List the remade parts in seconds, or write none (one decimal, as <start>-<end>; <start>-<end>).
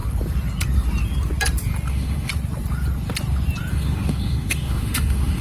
1.9-2.3; 3.7-5.4